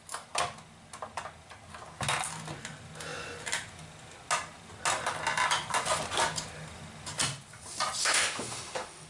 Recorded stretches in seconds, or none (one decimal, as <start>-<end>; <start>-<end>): 0.0-8.0